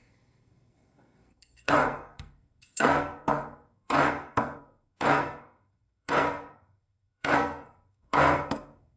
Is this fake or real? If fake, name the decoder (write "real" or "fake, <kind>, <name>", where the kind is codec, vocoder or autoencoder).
fake, codec, SNAC